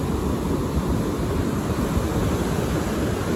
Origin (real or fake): real